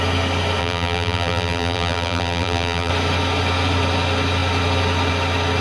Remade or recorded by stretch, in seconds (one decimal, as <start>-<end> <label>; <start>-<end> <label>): 0.0-0.6 recorded; 0.6-2.9 remade; 2.9-5.6 recorded